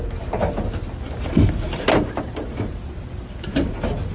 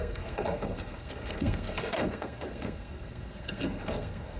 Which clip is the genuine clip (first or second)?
first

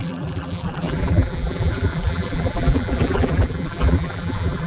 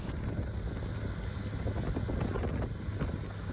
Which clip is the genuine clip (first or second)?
second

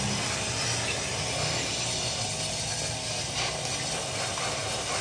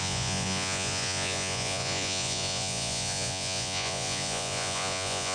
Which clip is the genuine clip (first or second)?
first